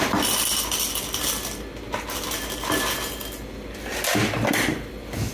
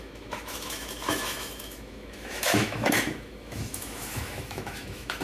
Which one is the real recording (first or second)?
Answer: first